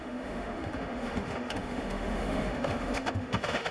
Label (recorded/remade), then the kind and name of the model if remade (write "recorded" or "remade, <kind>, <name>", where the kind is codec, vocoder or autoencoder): remade, autoencoder, DAC-VAE